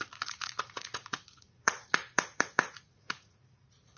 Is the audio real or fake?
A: fake